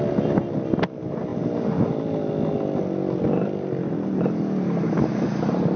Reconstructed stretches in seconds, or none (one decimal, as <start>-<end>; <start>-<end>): none